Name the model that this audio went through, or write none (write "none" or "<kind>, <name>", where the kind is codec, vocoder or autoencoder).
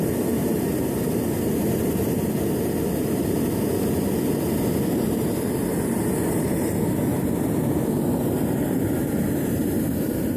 none